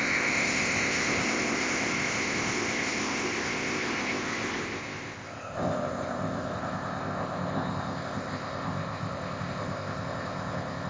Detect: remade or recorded remade